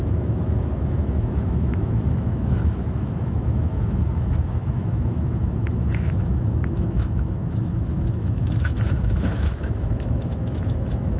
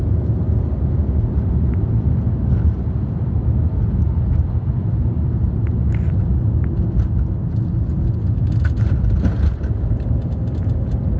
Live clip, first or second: second